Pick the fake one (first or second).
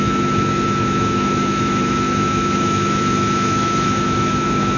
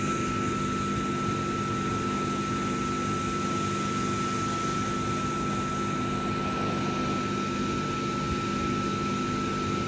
first